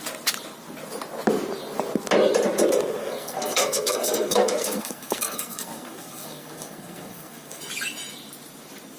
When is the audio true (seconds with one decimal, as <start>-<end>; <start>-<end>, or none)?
0.0-3.0; 7.6-9.0